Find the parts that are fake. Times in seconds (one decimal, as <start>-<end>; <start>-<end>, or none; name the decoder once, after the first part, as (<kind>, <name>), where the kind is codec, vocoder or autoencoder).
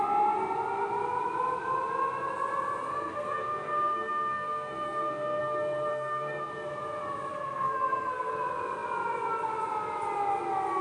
2.9-5.4 (codec, SNAC); 5.9-6.5; 7.3-8.3